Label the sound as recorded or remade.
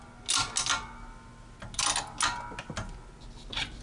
recorded